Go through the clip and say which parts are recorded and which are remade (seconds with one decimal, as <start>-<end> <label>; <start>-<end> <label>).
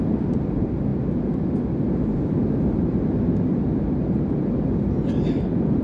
0.0-5.8 recorded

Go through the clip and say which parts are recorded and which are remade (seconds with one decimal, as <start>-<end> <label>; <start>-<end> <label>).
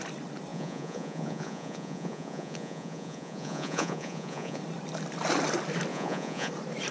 0.0-0.5 recorded; 0.5-4.6 remade; 4.6-5.9 recorded; 5.9-6.5 remade; 6.5-6.9 recorded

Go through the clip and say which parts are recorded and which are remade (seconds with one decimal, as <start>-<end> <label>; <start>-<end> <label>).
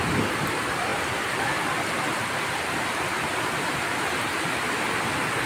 0.0-0.9 recorded; 0.9-1.6 remade; 1.6-5.5 recorded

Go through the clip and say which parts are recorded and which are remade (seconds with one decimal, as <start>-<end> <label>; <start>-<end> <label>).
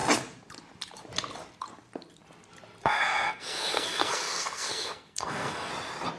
0.0-2.8 recorded; 2.8-5.7 remade; 5.7-6.2 recorded